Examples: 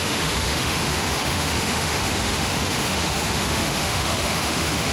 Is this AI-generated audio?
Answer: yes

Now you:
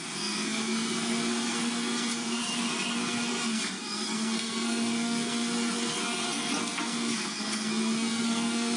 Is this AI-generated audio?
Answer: yes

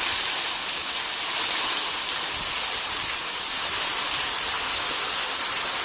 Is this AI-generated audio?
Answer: no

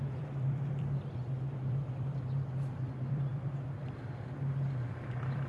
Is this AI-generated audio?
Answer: yes